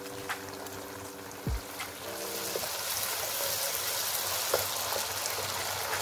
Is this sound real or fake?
real